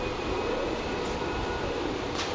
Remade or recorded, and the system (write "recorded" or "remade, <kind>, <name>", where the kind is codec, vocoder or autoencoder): recorded